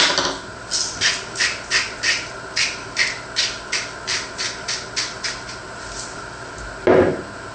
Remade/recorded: recorded